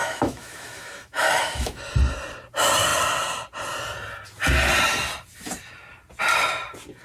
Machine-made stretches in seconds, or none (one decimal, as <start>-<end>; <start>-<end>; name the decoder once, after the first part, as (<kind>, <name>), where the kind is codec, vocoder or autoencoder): 0.0-1.8 (autoencoder, DAC-VAE)